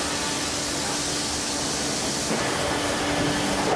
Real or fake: real